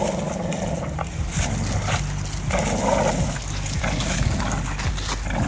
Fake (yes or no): no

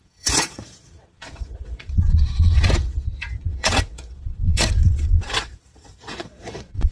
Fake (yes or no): yes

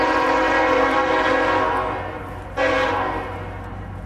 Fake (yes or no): no